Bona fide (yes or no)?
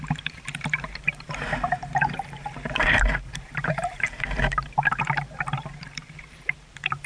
no